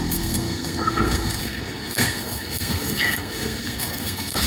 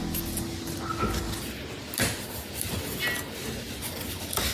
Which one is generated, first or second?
first